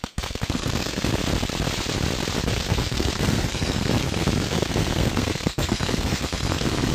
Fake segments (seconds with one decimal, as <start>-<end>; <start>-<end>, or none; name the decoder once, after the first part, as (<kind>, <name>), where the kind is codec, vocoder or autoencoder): 0.0-1.2 (codec, SNAC); 2.5-6.9